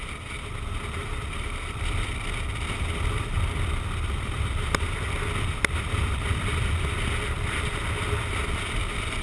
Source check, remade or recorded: recorded